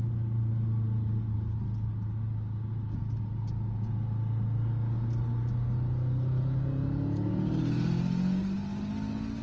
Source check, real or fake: real